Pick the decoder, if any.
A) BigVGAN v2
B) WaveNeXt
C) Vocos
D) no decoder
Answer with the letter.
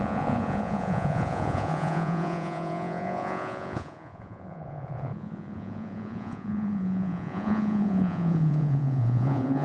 C